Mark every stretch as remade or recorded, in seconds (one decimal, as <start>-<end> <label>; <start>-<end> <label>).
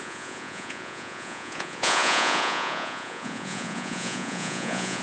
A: 0.0-5.0 remade